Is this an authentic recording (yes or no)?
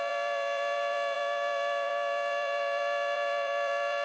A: no